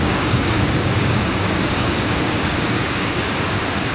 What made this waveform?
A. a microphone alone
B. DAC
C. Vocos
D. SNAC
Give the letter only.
B